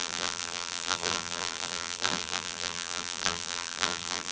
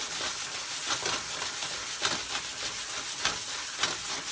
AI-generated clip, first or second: first